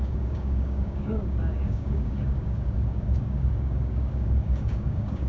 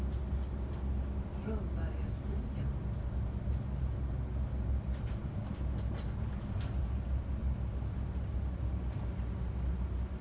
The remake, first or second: first